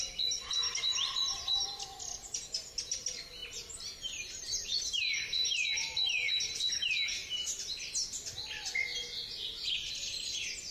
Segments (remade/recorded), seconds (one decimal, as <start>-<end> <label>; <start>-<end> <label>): 0.0-10.7 recorded